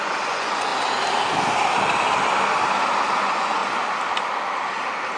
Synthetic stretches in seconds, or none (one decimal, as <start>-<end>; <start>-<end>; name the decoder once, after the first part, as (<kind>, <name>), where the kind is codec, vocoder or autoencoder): 0.0-0.7 (vocoder, Vocos); 3.2-3.6